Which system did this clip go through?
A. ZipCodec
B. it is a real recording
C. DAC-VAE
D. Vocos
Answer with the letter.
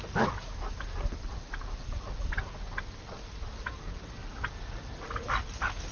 B